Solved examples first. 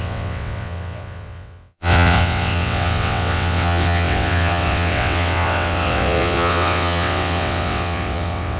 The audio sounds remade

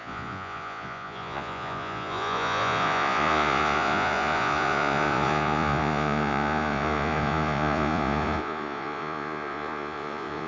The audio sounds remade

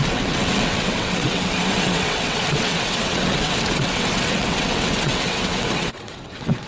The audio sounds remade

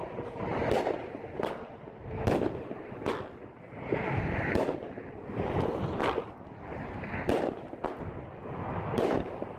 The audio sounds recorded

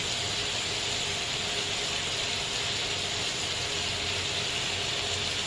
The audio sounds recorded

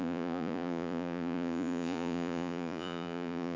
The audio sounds remade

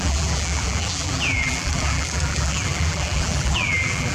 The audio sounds remade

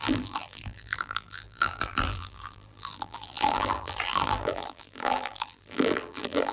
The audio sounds remade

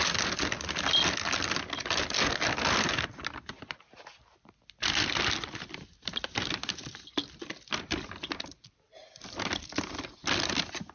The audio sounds recorded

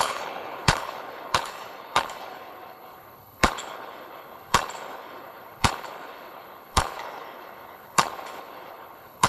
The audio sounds remade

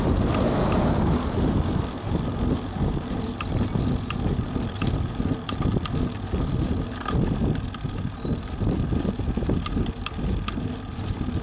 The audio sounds recorded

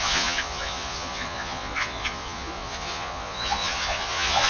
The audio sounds remade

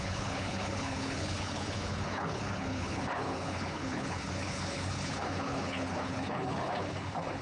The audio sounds remade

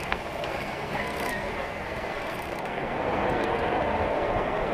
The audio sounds remade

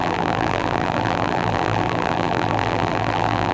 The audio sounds remade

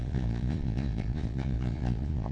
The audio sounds remade